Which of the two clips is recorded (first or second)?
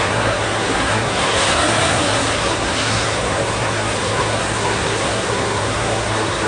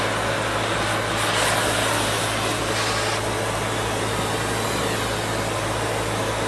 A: second